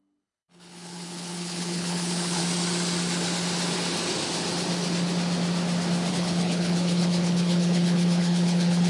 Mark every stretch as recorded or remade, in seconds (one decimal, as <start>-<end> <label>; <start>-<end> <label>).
0.0-2.4 remade; 2.4-6.1 recorded; 6.1-8.9 remade